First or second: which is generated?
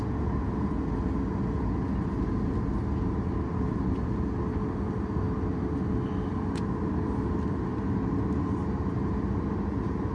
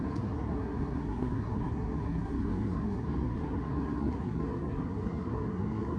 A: second